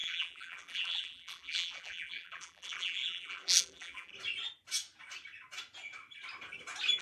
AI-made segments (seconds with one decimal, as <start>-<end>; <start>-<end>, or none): 0.0-4.1